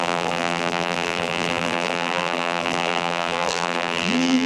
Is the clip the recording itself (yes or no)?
no